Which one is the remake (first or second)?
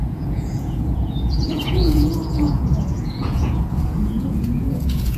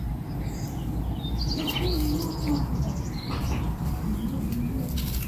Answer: first